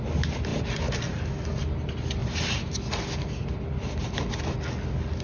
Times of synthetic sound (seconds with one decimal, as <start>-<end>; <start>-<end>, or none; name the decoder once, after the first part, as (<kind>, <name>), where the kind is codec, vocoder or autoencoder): none